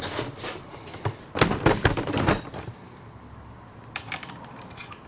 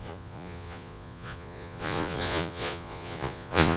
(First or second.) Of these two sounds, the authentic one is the first